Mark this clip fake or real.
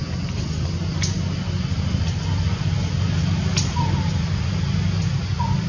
real